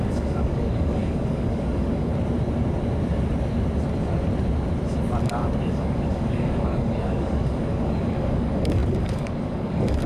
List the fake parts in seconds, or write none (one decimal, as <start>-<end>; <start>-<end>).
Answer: 0.0-2.1; 5.2-10.1